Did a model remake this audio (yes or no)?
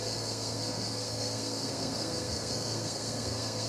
yes